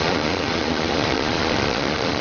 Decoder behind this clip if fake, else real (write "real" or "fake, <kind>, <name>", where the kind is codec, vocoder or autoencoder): fake, vocoder, Vocos